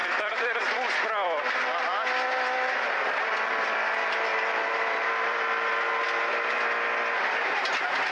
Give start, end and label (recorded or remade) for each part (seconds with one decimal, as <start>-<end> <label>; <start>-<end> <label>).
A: 0.0-0.6 remade; 0.6-4.3 recorded; 4.3-5.7 remade; 5.7-8.1 recorded